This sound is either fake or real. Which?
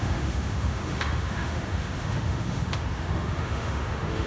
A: fake